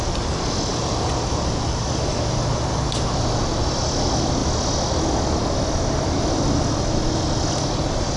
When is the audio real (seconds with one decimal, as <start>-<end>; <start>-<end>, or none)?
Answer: 0.0-8.2